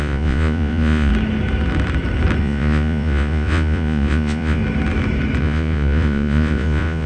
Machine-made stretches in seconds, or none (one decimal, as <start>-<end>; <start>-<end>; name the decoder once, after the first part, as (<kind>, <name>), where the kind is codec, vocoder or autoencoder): 0.0-1.1 (vocoder, Vocos); 2.4-4.6; 5.4-7.1